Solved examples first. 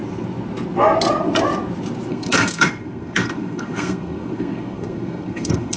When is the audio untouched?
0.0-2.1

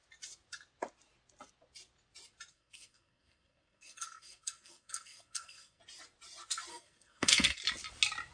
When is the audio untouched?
0.0-2.5; 5.8-6.7; 7.6-8.3